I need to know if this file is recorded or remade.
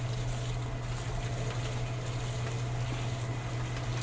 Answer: recorded